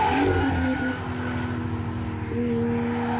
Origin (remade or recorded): recorded